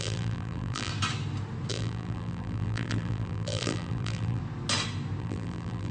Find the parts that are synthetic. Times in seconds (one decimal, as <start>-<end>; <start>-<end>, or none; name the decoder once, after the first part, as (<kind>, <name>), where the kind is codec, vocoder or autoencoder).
0.0-0.9 (vocoder, BigVGAN v2); 1.7-4.4; 5.2-5.9

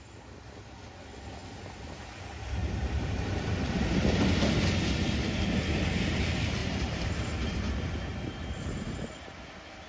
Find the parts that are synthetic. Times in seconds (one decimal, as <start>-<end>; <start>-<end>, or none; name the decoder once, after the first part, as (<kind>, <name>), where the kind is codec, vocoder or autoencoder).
2.6-3.8 (vocoder, BigVGAN v2); 6.6-7.1; 8.1-9.2

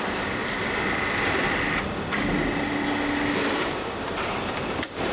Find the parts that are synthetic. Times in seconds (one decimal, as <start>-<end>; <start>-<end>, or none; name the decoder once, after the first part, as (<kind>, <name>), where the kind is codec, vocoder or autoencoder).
0.0-0.4 (vocoder, BigVGAN v2); 3.5-5.1

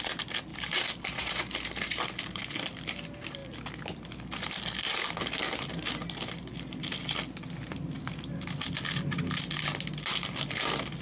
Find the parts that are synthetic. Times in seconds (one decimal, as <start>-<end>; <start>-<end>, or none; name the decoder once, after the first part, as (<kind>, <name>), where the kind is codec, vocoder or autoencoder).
0.5-1.4 (vocoder, BigVGAN v2)

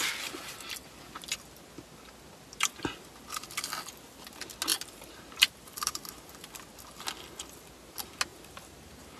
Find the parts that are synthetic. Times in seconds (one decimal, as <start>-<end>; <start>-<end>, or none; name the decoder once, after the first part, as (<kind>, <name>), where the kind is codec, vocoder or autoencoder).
4.7-6.3 (vocoder, BigVGAN v2); 8.3-9.2

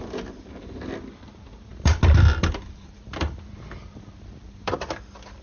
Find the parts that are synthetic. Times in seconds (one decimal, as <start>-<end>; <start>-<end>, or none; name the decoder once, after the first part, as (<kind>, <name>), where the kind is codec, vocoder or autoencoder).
1.7-4.9 (vocoder, BigVGAN v2)

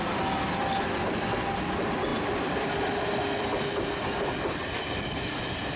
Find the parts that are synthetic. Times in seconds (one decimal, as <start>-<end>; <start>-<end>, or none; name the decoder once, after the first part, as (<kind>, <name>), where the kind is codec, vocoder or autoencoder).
2.1-3.5 (vocoder, BigVGAN v2)